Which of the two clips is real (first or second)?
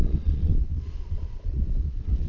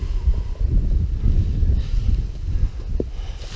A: second